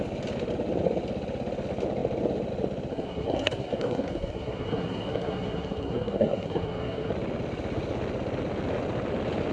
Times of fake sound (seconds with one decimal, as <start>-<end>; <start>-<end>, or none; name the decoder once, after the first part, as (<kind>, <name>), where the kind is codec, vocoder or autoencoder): 2.9-7.1 (codec, SNAC)